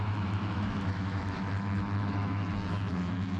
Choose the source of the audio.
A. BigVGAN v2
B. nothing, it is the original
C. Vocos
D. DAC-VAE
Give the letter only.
D